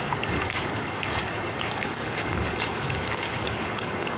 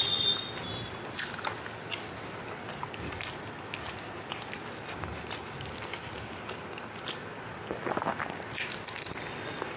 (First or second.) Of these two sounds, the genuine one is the second